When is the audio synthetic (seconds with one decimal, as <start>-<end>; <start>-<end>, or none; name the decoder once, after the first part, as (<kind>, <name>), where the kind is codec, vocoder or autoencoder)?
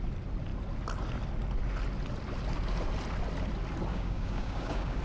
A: 3.9-5.0 (codec, DAC)